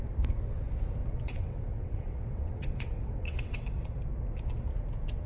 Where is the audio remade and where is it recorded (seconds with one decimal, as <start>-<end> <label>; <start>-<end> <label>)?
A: 0.0-1.0 recorded; 1.0-3.6 remade; 3.6-5.3 recorded